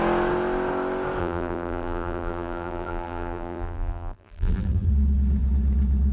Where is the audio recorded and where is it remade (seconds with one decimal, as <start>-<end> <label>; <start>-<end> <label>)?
0.0-1.2 recorded; 1.2-4.9 remade; 4.9-6.1 recorded